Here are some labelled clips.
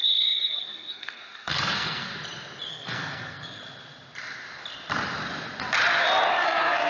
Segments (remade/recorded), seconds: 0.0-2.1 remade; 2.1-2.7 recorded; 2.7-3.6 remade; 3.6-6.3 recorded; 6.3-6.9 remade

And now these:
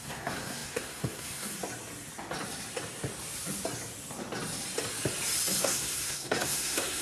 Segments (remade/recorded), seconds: 0.0-1.6 remade; 1.6-5.6 recorded; 5.6-7.0 remade

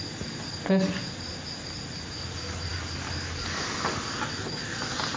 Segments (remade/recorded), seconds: 0.0-5.2 recorded

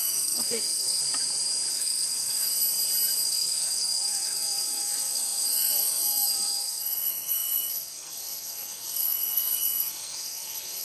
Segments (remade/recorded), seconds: 0.0-1.0 remade; 1.0-1.7 recorded; 1.7-2.5 remade; 2.5-3.3 recorded; 3.3-10.8 remade

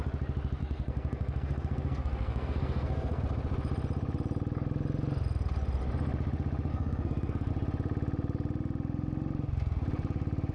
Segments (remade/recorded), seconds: 0.0-0.6 recorded; 0.6-3.2 remade; 3.2-6.7 recorded; 6.7-7.5 remade; 7.5-10.5 recorded